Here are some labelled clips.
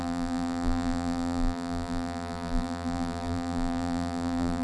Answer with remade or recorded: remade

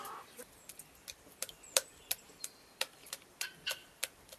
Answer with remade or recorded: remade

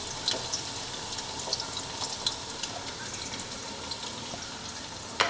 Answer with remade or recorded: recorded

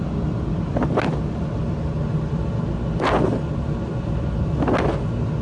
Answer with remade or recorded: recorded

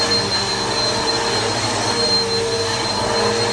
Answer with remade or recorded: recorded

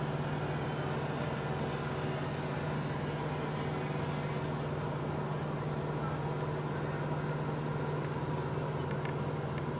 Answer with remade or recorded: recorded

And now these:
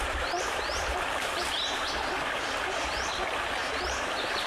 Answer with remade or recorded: remade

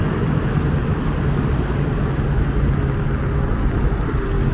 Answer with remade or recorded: recorded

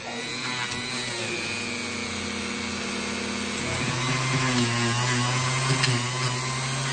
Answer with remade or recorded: recorded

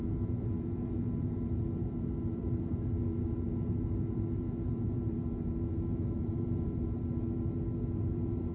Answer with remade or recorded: remade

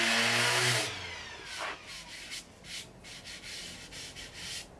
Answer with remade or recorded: recorded